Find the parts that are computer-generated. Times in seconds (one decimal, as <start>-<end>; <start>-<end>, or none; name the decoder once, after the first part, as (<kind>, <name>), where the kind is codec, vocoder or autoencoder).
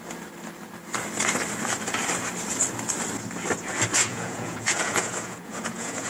4.0-6.1 (vocoder, Vocos)